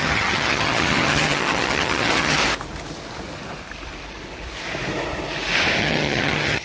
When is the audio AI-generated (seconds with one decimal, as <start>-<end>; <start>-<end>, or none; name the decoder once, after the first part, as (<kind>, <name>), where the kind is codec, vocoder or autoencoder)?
0.0-2.4 (vocoder, HiFi-GAN); 5.8-6.6